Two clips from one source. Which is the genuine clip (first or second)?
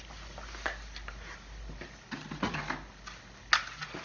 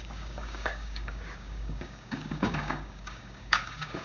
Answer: first